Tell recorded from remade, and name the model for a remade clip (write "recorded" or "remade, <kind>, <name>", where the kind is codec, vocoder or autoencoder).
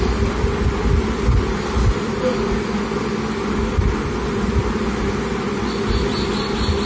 recorded